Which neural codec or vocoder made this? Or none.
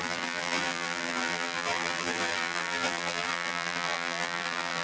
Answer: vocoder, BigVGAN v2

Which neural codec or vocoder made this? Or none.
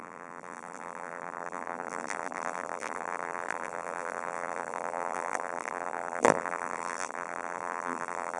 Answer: vocoder, BigVGAN v2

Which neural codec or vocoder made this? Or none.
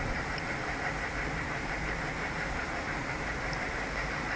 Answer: vocoder, BigVGAN v2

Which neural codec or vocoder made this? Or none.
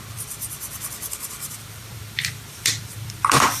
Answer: vocoder, BigVGAN v2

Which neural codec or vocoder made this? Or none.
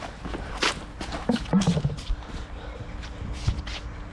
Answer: none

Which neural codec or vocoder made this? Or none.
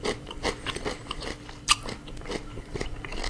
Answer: vocoder, BigVGAN v2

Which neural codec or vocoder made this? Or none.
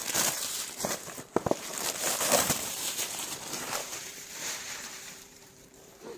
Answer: vocoder, BigVGAN v2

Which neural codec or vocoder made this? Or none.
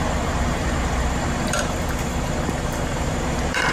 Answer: vocoder, BigVGAN v2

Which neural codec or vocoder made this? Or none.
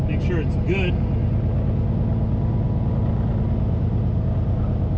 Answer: none